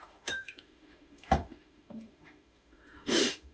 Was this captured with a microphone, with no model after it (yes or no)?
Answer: no